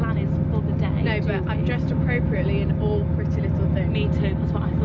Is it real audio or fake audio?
real